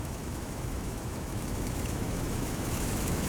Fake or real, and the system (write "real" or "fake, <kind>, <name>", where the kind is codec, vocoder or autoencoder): fake, autoencoder, DAC-VAE